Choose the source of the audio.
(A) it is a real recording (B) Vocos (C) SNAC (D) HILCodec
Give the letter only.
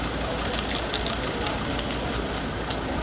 A